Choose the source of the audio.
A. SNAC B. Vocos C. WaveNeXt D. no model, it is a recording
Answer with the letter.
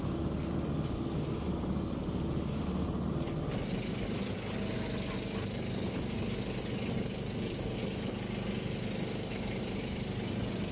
D